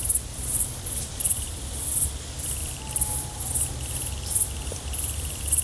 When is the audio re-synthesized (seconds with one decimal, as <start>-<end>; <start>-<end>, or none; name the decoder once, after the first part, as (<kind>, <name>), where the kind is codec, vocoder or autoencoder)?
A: none